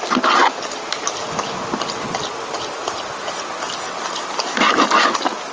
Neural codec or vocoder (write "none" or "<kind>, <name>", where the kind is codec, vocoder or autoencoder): none